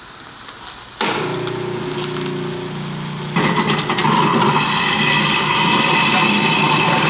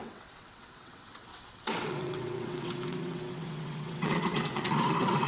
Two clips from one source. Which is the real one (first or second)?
first